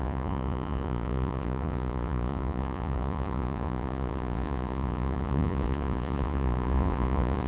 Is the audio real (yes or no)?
no